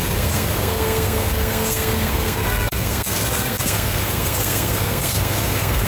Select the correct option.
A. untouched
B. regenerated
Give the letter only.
B